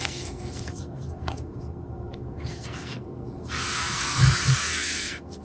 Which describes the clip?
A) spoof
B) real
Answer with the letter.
A